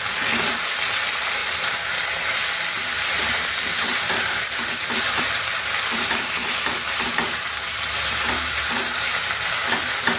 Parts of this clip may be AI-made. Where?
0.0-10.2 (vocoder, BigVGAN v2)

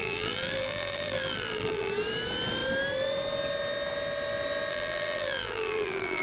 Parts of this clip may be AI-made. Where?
0.0-1.9 (vocoder, BigVGAN v2); 4.7-6.2

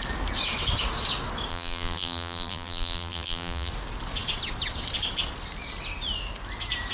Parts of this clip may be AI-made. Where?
1.5-3.7 (vocoder, BigVGAN v2)

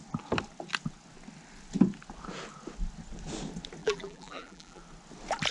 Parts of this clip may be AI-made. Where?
3.8-4.8 (vocoder, BigVGAN v2)

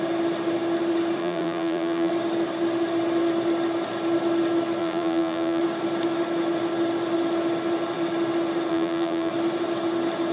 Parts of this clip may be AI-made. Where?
1.2-2.1 (vocoder, BigVGAN v2); 4.8-5.6; 8.7-9.3